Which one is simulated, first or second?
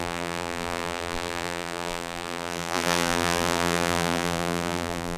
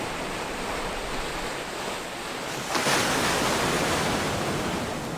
first